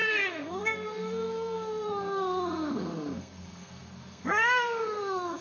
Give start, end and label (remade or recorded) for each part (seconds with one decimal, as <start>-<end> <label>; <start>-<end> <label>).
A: 0.0-5.4 remade